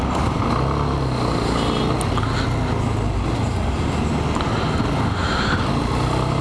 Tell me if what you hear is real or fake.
real